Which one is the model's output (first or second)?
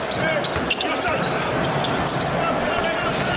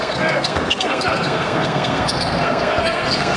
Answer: second